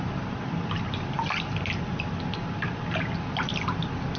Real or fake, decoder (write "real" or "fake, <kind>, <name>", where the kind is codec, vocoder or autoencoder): real